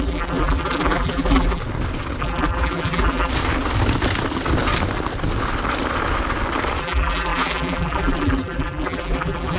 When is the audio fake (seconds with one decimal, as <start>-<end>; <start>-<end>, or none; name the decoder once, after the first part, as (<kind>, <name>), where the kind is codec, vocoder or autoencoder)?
0.0-1.6 (vocoder, BigVGAN v2); 2.2-3.3; 6.8-9.6